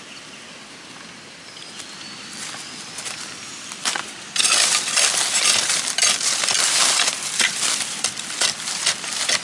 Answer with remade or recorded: remade